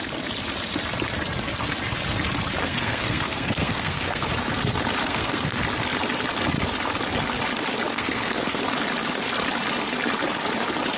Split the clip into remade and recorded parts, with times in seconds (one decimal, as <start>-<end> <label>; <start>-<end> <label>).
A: 0.0-2.6 recorded; 2.6-4.3 remade; 4.3-5.0 recorded; 5.0-5.6 remade; 5.6-7.9 recorded; 7.9-8.6 remade; 8.6-11.0 recorded